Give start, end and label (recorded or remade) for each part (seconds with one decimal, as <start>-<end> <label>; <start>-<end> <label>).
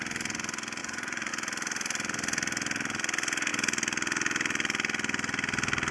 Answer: 0.0-0.8 recorded; 0.8-1.3 remade; 1.3-5.9 recorded